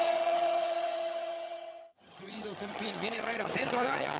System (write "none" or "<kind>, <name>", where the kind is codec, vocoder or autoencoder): vocoder, HiFi-GAN